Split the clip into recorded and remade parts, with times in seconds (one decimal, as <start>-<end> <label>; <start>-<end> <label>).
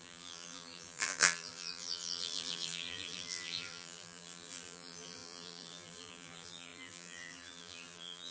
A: 0.0-8.3 remade